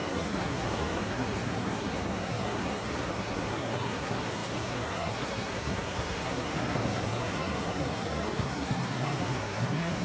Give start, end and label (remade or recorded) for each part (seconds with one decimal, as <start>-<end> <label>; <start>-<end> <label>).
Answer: 0.0-10.0 remade